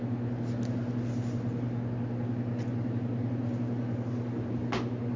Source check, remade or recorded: recorded